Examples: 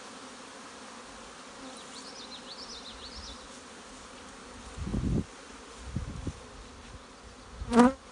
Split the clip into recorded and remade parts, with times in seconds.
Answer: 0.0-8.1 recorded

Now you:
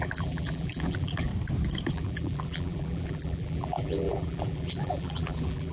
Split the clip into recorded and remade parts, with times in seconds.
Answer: 0.0-1.3 remade; 1.3-1.9 recorded; 1.9-5.7 remade